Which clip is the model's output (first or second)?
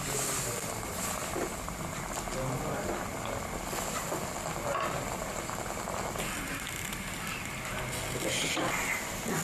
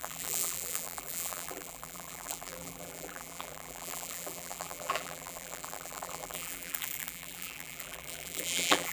second